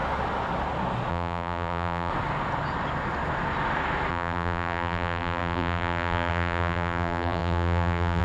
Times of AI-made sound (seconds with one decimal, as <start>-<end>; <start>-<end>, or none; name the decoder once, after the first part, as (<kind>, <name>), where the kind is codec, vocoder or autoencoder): 1.1-2.1 (vocoder, BigVGAN v2); 4.1-8.2